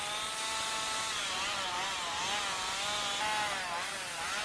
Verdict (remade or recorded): recorded